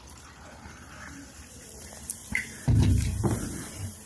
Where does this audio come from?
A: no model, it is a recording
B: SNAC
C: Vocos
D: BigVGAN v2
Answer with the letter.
D